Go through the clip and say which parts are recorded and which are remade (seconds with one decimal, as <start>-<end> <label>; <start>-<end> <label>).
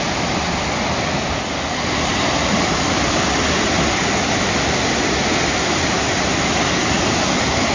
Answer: 0.0-7.7 recorded